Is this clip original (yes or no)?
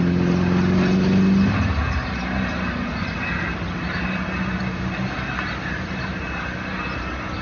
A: yes